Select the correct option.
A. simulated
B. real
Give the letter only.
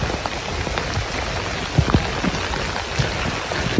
B